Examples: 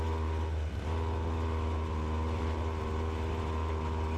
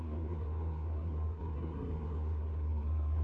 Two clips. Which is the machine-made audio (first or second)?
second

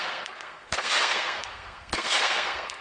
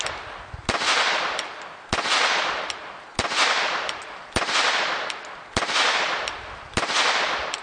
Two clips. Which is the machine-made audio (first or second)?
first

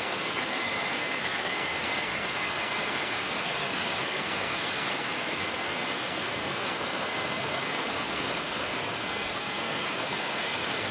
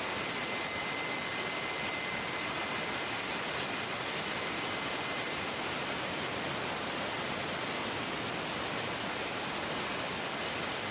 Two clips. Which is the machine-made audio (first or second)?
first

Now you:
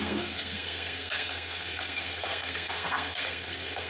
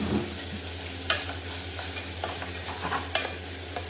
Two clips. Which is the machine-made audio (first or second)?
first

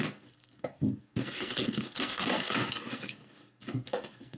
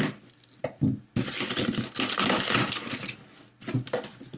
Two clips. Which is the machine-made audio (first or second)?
first